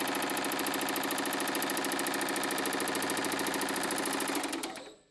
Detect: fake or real real